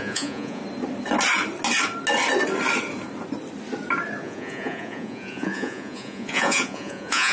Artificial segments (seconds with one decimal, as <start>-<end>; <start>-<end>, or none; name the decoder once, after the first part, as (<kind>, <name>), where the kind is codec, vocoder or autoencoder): 0.0-0.6 (vocoder, Vocos); 4.2-7.3